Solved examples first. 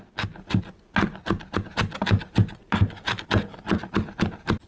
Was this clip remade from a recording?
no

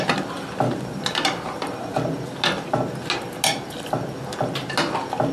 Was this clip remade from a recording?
no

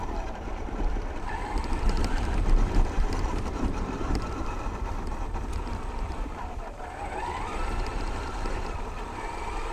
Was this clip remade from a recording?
yes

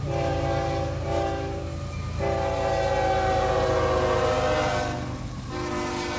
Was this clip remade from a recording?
no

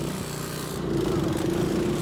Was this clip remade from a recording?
no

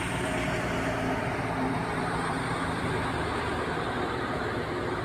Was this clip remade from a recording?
yes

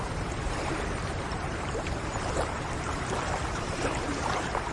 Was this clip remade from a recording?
yes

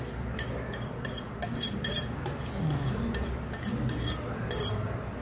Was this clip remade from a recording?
no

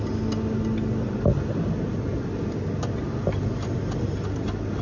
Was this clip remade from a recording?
no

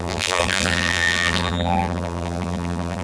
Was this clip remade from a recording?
yes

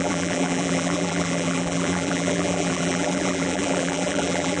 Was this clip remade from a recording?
yes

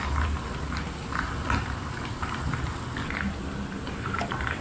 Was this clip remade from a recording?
yes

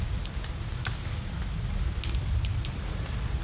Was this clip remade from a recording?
no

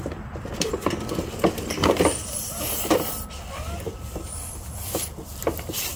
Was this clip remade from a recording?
no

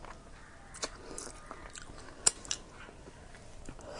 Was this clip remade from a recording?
no